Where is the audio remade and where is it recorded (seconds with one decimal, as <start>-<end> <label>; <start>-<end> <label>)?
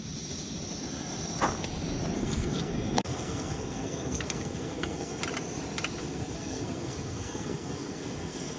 0.0-2.2 recorded; 2.2-5.2 remade; 5.2-6.0 recorded; 6.0-8.6 remade